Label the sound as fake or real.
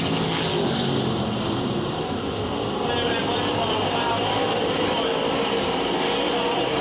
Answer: real